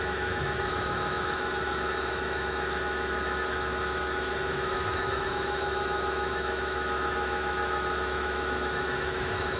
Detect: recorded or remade remade